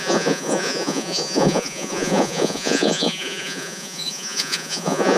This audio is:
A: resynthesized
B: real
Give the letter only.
A